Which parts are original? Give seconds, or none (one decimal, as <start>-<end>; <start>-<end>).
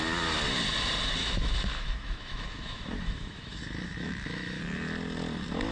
0.0-1.2; 4.6-5.7